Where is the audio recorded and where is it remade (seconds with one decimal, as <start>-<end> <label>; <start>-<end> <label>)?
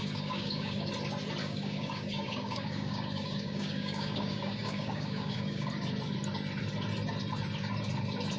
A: 0.0-0.9 remade; 0.9-1.4 recorded; 1.4-5.7 remade; 5.7-8.4 recorded